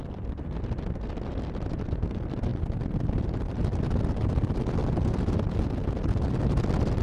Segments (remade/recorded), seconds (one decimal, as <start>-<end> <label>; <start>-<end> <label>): 0.0-7.0 recorded